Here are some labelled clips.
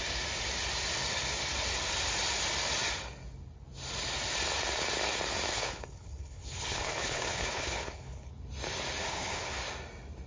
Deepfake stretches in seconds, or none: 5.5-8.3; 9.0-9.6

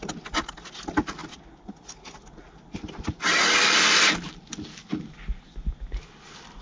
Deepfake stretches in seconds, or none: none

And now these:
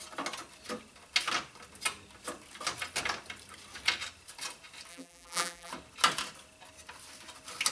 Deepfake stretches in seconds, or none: 4.9-5.7